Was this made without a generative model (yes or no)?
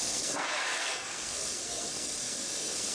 no